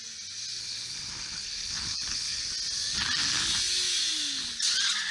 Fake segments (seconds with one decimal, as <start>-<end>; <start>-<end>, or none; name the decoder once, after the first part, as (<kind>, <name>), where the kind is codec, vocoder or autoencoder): 0.6-2.4 (codec, HILCodec)